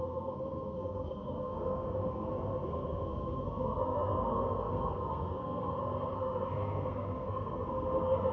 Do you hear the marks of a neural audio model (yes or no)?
yes